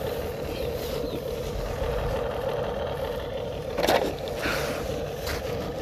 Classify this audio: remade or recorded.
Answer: recorded